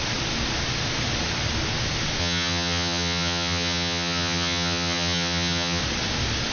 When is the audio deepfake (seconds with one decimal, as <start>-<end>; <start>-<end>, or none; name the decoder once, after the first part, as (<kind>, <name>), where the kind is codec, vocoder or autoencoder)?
2.2-5.8 (vocoder, HiFi-GAN)